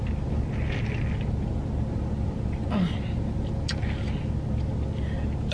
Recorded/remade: recorded